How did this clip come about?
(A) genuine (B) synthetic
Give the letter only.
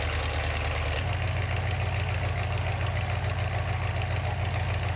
A